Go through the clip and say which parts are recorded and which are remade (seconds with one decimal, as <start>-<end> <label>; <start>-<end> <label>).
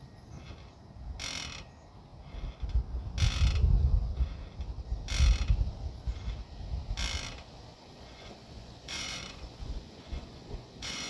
0.0-7.7 recorded; 7.7-11.1 remade